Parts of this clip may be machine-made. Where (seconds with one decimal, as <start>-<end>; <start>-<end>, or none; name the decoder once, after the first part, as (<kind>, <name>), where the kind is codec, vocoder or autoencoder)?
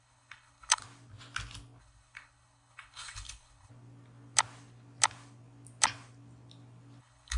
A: 0.0-0.8 (codec, HILCodec); 1.8-3.7; 7.0-7.4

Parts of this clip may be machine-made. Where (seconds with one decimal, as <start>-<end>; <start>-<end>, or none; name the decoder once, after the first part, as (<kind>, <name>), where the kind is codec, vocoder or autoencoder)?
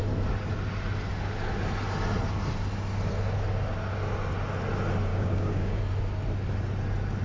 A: 5.1-5.8 (codec, DAC)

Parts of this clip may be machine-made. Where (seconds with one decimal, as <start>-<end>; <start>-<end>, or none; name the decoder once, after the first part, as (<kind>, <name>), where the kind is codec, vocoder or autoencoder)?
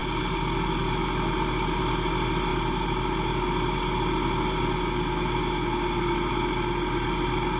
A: none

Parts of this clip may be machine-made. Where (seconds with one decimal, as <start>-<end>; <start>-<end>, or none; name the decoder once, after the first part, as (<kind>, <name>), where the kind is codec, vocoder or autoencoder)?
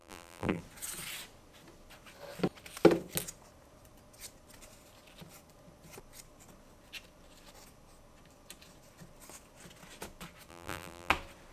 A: 0.0-0.6 (vocoder, BigVGAN v2); 10.5-11.1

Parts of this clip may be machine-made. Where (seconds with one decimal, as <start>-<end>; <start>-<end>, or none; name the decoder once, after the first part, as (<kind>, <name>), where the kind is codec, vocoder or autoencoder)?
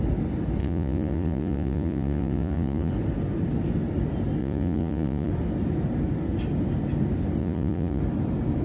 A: 0.6-2.9 (vocoder, Vocos); 4.4-5.3; 7.4-8.0